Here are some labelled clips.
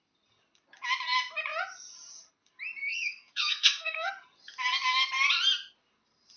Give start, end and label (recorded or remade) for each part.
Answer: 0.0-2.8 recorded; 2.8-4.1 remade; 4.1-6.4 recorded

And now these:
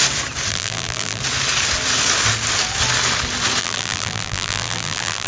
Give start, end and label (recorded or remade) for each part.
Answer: 0.0-0.5 recorded; 0.5-1.2 remade; 1.2-3.6 recorded; 3.6-5.3 remade

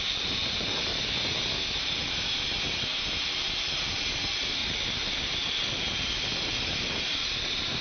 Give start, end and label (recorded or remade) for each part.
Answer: 0.0-0.9 remade; 0.9-3.2 recorded; 3.2-7.8 remade

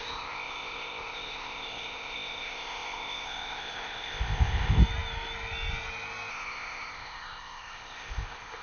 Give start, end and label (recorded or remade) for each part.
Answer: 0.0-4.8 remade; 4.8-6.3 recorded; 6.3-8.6 remade